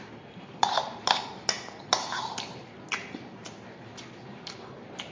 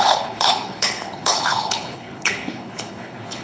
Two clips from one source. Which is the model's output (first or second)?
second